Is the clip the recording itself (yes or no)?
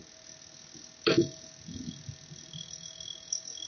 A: yes